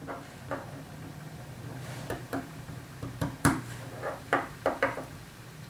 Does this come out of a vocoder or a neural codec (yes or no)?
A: yes